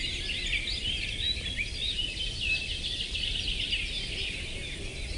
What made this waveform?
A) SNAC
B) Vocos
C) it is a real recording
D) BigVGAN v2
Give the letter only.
C